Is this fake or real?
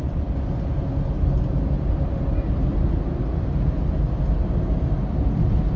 real